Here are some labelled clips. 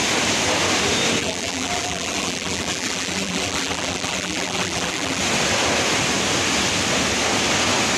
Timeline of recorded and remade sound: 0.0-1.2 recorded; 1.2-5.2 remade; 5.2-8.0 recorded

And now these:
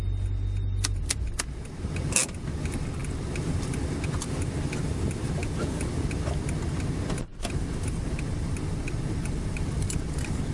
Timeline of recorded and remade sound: 0.0-3.0 recorded; 3.0-3.9 remade; 3.9-7.3 recorded; 7.3-9.9 remade; 9.9-10.5 recorded

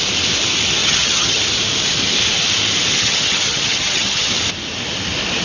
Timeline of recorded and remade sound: 0.0-0.8 recorded; 0.8-1.4 remade; 1.4-3.0 recorded; 3.0-4.3 remade; 4.3-5.4 recorded